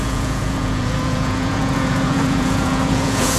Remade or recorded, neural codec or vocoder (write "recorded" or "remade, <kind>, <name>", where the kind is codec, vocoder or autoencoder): remade, vocoder, Vocos